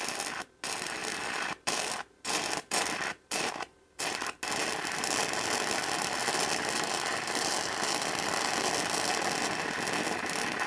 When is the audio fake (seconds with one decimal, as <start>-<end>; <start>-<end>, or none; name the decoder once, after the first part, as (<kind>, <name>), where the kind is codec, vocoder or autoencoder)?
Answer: 1.0-4.0 (vocoder, BigVGAN v2); 6.2-7.5